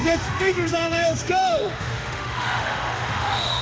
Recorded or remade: remade